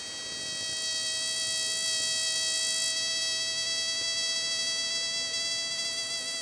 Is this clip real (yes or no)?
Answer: yes